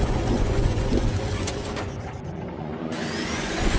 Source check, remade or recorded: remade